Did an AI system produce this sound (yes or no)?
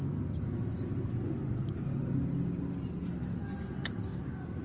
no